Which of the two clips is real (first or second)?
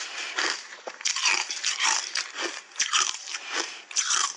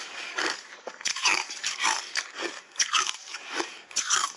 first